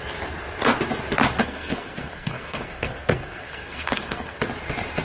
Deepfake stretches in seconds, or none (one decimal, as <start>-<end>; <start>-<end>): 1.4-4.4